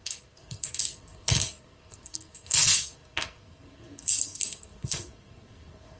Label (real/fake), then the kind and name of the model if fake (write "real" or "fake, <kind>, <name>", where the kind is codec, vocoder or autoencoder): fake, codec, SNAC